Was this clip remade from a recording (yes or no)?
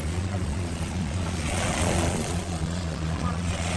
yes